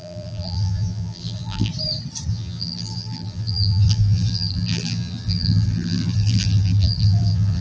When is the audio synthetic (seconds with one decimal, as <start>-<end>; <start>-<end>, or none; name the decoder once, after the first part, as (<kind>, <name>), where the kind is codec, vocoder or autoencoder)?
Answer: 0.0-1.7 (vocoder, BigVGAN v2); 2.3-7.6